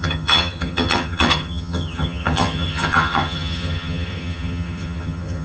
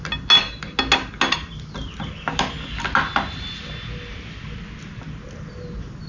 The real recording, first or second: second